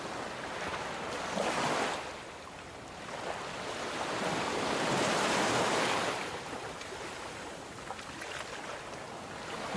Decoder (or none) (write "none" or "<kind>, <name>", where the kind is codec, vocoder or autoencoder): none